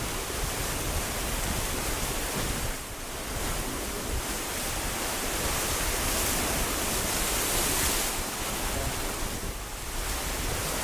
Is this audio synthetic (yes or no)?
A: no